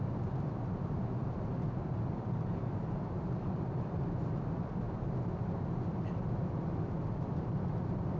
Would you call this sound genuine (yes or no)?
no